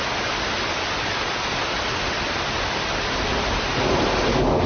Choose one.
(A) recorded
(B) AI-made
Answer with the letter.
A